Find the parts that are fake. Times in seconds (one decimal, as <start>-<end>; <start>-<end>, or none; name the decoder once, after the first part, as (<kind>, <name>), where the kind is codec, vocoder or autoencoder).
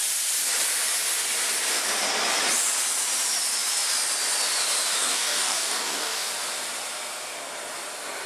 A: 5.0-6.3 (codec, DAC)